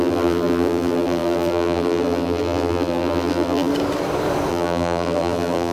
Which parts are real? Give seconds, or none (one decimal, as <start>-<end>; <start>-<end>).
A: 3.7-4.5